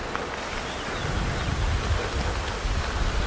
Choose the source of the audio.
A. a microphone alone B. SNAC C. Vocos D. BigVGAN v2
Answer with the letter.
A